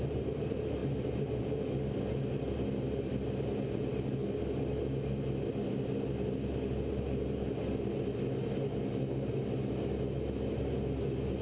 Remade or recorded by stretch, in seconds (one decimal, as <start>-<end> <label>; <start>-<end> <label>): 0.0-11.4 recorded